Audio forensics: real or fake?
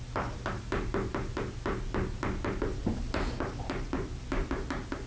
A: real